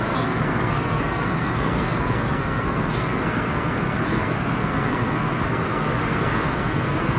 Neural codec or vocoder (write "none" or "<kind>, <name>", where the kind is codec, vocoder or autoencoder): codec, SNAC